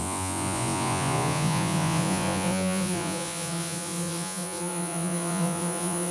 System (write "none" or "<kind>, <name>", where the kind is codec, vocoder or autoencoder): vocoder, Vocos